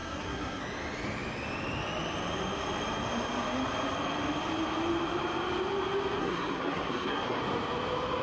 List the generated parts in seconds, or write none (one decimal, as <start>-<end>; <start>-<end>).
0.0-0.6; 6.2-7.4